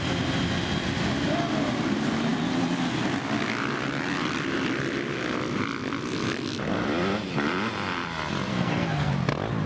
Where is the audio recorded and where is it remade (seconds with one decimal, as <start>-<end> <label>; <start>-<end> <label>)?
0.0-8.5 recorded; 8.5-9.1 remade; 9.1-9.7 recorded